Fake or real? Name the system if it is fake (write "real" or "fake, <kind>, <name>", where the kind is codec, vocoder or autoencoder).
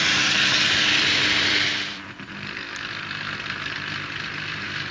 fake, vocoder, BigVGAN v2